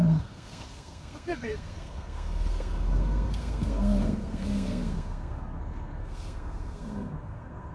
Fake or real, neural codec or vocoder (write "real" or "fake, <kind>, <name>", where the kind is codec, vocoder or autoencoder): fake, codec, SNAC